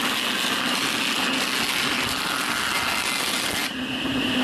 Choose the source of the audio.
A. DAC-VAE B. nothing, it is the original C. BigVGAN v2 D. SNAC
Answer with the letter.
B